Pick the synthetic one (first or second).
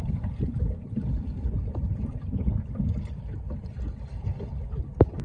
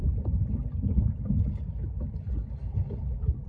first